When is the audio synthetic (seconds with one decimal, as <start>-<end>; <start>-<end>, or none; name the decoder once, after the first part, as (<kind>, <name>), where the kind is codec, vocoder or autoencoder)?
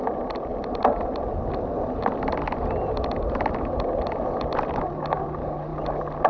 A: none